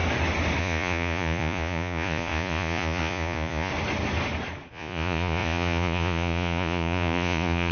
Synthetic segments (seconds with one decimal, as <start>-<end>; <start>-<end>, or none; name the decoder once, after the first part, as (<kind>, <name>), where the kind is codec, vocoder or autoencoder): 0.6-3.7 (vocoder, Vocos); 4.7-7.7